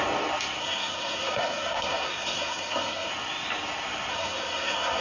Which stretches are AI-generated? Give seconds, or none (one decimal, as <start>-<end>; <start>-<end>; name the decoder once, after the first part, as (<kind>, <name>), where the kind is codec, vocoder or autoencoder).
0.6-3.1 (codec, SNAC); 4.1-5.0